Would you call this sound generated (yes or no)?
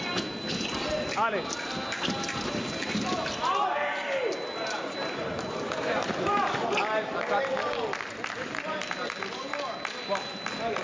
no